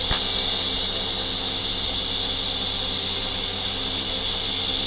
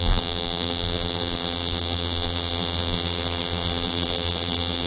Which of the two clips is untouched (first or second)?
first